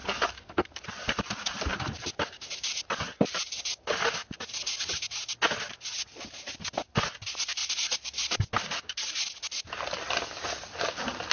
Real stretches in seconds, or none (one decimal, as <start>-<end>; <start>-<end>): 0.8-11.3